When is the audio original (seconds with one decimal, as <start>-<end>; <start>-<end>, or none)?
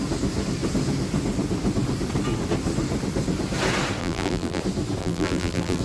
0.0-4.0; 4.6-5.0